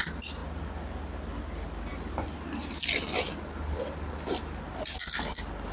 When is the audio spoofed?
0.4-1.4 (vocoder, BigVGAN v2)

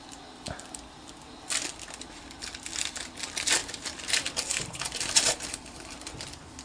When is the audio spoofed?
3.6-6.1 (vocoder, BigVGAN v2)

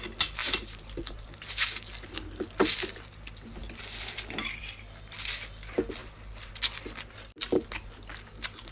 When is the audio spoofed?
0.4-1.0 (vocoder, BigVGAN v2); 6.0-6.5

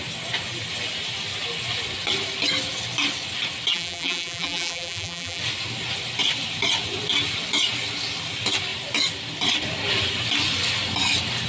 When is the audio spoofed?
3.7-5.4 (vocoder, BigVGAN v2)

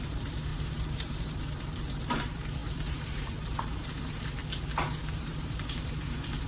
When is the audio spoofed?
0.0-4.4 (vocoder, BigVGAN v2); 5.0-6.5

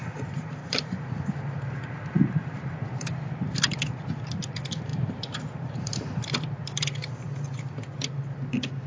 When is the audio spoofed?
0.0-3.1 (vocoder, BigVGAN v2); 4.9-8.1

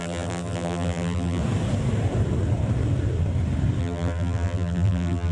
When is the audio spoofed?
0.0-1.4 (vocoder, BigVGAN v2); 3.8-5.3

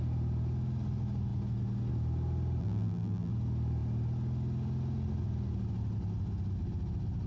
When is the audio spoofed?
2.6-3.3 (vocoder, BigVGAN v2)